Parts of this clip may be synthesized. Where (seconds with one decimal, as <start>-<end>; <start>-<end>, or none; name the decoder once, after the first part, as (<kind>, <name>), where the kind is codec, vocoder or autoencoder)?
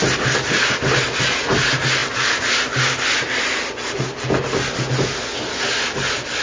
2.0-5.3 (vocoder, BigVGAN v2)